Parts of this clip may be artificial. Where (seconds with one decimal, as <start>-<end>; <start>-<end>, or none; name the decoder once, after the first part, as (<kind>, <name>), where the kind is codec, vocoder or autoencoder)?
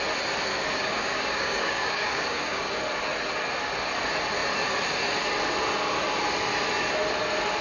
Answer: 0.5-2.8 (codec, DAC)